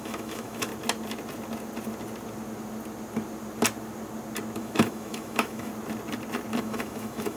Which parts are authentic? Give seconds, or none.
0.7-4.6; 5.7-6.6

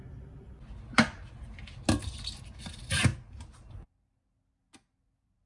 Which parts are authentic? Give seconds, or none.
0.0-5.5

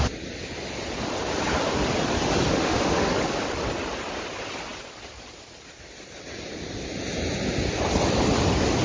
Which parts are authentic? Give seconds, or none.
0.0-2.5; 3.1-8.8

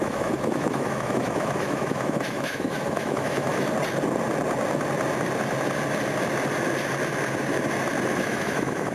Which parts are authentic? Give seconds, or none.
3.5-8.1

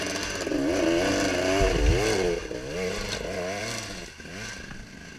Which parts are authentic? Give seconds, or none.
0.0-5.2

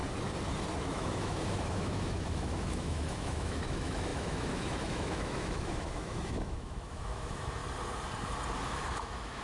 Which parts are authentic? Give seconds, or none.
0.0-0.8; 7.6-8.6

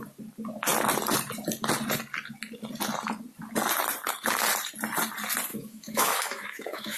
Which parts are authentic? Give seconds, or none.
0.0-5.5